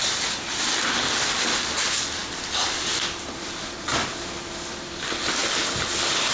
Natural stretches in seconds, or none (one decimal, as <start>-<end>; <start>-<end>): 4.1-4.7; 5.4-6.3